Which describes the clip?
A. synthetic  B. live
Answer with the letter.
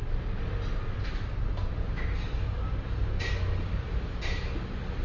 B